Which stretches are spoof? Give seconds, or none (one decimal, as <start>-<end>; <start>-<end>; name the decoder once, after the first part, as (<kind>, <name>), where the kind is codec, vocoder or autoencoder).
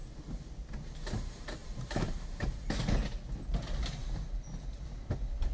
1.6-2.6 (vocoder, BigVGAN v2)